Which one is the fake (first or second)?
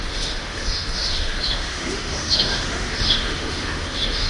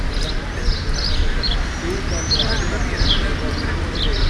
first